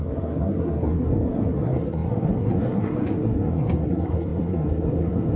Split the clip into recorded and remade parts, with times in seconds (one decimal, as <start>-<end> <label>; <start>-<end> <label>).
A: 0.0-5.4 remade